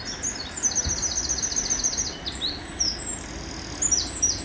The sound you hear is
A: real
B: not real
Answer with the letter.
A